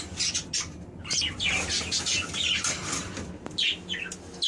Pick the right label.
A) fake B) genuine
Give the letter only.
B